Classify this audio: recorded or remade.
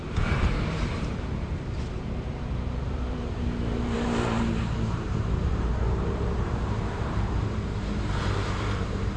remade